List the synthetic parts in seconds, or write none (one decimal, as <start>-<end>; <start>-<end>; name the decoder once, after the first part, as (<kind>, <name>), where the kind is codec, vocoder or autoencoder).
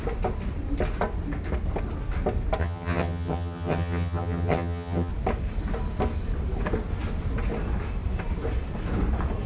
2.6-5.1 (vocoder, HiFi-GAN)